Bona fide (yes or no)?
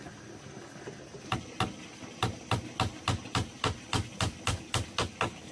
yes